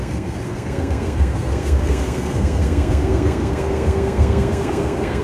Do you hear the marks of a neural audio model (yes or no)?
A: yes